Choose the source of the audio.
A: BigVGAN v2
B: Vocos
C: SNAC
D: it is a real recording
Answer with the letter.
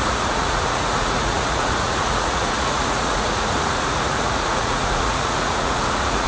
B